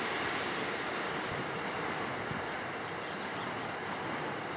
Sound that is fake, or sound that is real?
real